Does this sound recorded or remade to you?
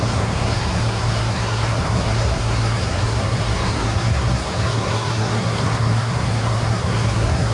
remade